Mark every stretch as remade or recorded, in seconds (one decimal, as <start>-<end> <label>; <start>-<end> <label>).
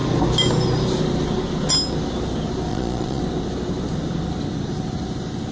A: 0.0-2.7 recorded; 2.7-3.2 remade; 3.2-5.5 recorded